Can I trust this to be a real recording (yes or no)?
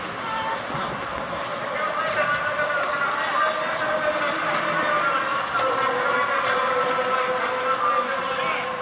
yes